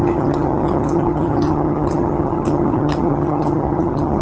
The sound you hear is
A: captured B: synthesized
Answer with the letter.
B